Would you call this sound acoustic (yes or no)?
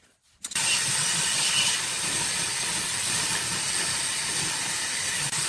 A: yes